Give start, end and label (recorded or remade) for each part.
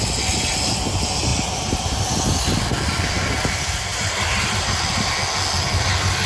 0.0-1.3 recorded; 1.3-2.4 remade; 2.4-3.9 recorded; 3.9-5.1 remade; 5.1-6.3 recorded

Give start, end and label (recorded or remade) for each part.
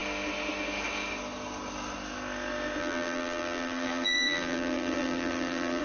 0.0-2.8 recorded; 2.8-5.8 remade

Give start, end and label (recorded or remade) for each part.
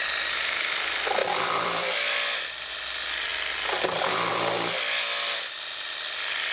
0.0-6.5 recorded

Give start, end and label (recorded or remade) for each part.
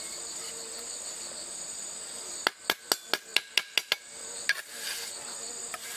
0.0-6.0 recorded